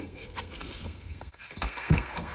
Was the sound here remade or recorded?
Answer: remade